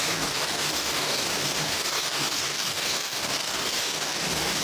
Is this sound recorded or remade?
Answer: remade